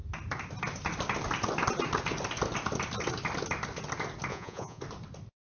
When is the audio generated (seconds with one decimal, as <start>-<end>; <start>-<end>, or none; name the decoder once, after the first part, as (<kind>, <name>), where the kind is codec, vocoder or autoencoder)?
4.3-4.8 (vocoder, Vocos)